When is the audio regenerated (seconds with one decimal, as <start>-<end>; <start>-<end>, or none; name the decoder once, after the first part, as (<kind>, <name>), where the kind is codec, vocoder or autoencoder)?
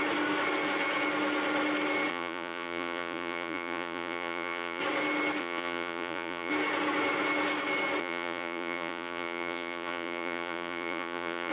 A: 2.1-4.8 (vocoder, Vocos); 5.4-6.5; 8.0-11.5